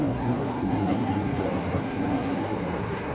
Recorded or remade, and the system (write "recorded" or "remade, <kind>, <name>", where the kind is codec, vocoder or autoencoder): remade, codec, SNAC